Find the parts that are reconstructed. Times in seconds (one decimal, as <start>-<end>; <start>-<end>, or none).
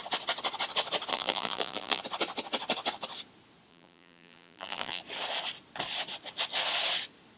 1.1-2.0; 3.7-5.0